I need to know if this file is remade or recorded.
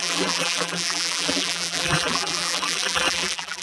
remade